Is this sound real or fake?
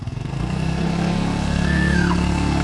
fake